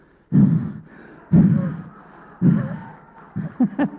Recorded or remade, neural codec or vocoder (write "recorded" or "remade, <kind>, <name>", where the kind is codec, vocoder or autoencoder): recorded